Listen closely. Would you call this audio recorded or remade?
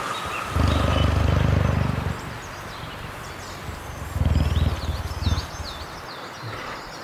recorded